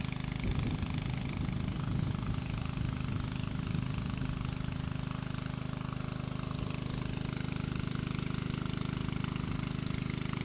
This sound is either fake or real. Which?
real